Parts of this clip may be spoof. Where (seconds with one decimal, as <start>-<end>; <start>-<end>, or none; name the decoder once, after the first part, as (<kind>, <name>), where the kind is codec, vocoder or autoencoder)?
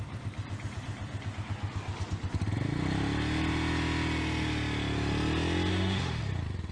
5.7-6.2 (autoencoder, DAC-VAE)